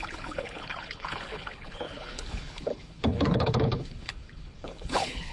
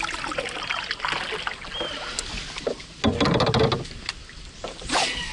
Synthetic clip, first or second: first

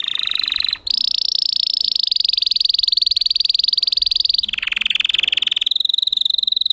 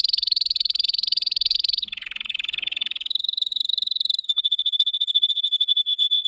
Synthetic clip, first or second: second